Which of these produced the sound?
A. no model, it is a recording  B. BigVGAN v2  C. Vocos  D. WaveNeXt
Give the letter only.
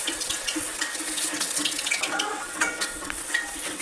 D